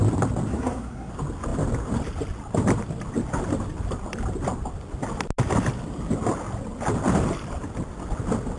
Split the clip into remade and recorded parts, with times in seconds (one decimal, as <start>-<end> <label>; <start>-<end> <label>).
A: 0.0-0.5 recorded; 0.5-1.1 remade; 1.1-8.6 recorded